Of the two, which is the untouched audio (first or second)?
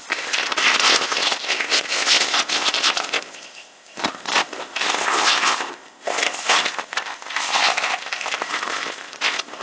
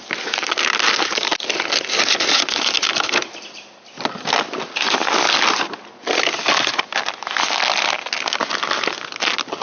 second